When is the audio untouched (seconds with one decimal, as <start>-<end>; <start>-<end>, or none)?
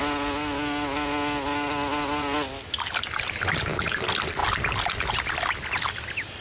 0.0-6.4